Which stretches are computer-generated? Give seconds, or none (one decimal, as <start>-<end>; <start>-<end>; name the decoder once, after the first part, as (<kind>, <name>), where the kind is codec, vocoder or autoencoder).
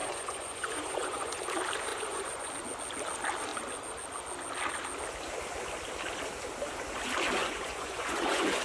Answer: 0.0-1.4 (vocoder, Vocos); 1.9-2.5; 7.4-8.6